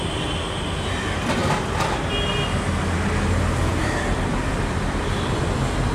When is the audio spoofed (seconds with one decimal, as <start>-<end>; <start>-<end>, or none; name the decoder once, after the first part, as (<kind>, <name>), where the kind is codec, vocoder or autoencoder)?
1.4-2.3 (vocoder, BigVGAN v2); 3.7-5.5